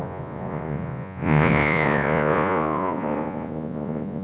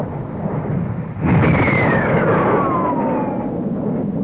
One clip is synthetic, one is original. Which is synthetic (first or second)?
first